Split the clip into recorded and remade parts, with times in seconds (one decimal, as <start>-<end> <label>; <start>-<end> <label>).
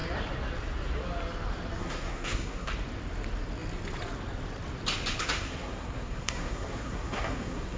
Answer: 0.0-1.8 recorded; 1.8-2.7 remade; 2.7-5.2 recorded; 5.2-7.8 remade